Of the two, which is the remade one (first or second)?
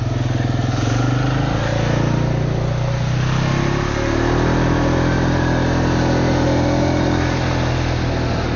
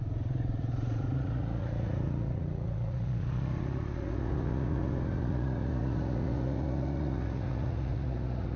second